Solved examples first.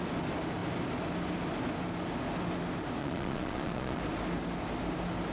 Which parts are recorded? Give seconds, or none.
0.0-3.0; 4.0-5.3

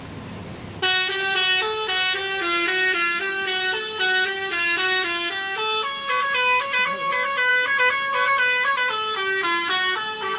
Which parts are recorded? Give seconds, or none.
0.0-10.4

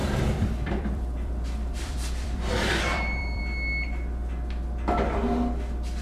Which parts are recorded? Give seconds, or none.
3.4-6.0

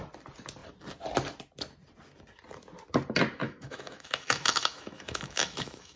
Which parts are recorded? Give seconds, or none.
0.0-3.4

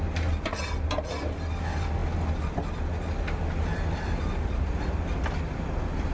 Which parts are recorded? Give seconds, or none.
0.0-6.1

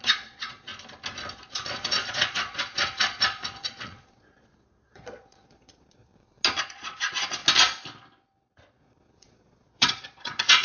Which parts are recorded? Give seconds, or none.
0.7-1.3; 6.1-6.6; 7.4-8.4

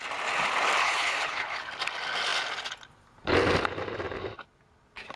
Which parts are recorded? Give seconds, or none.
0.0-0.8; 1.7-5.2

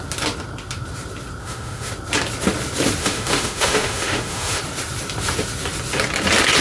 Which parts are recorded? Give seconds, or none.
0.0-1.4; 1.9-3.0; 4.6-6.6